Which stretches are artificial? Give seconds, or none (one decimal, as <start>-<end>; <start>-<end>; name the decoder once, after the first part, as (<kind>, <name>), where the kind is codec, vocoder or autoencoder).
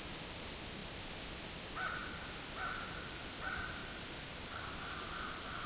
3.8-4.6 (vocoder, BigVGAN v2)